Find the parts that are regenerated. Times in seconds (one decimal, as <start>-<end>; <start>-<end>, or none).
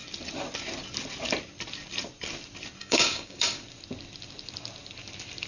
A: 2.8-3.6